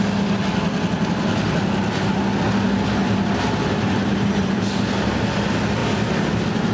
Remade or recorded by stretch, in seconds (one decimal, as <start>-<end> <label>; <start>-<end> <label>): 0.0-3.0 recorded; 3.0-4.8 remade; 4.8-5.8 recorded; 5.8-6.3 remade; 6.3-6.7 recorded